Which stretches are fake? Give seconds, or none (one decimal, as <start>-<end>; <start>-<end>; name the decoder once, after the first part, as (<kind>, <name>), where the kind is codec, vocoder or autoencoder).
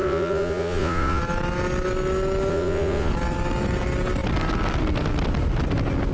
0.0-1.2 (vocoder, Vocos); 2.5-3.1